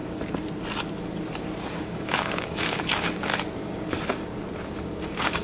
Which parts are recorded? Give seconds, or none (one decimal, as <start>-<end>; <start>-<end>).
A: 0.0-1.8; 3.3-4.8

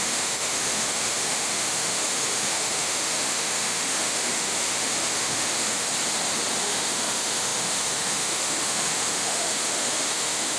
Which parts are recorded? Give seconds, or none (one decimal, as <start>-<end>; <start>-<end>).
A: 5.9-6.6

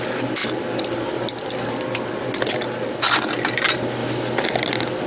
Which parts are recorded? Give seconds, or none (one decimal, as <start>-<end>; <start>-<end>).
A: 0.4-3.5; 4.0-4.6

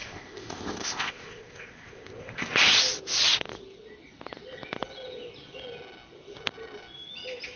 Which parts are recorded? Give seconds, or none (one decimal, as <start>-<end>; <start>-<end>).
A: 2.5-7.6

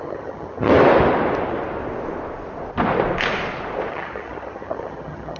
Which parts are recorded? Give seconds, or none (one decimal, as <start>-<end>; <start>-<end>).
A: 0.7-3.9

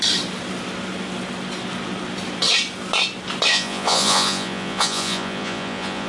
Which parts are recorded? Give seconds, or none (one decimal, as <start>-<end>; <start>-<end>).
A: 0.0-3.5

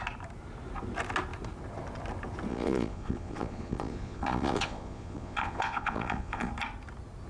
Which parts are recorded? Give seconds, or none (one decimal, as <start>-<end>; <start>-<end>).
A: 0.0-2.5; 6.5-7.3